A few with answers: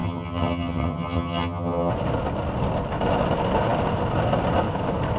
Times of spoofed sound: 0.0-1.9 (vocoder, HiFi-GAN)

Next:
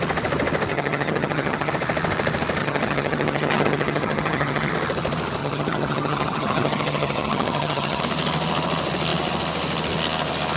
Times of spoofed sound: 0.7-1.7 (vocoder, HiFi-GAN); 2.6-4.7; 5.4-8.0

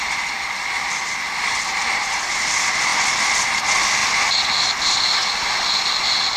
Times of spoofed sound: none

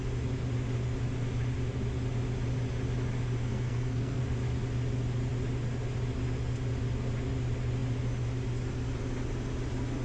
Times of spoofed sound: 3.4-4.2 (codec, SNAC)

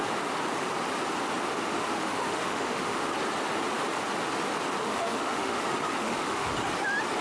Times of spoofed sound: 1.7-3.1 (autoencoder, DAC-VAE); 4.8-5.6; 6.0-6.5

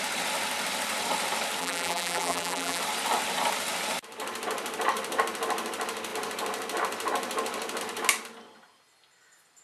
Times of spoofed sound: 1.6-2.8 (vocoder, BigVGAN v2)

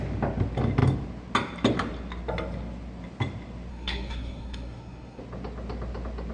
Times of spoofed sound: 3.7-5.2 (codec, SNAC)